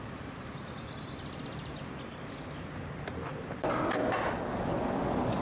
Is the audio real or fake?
real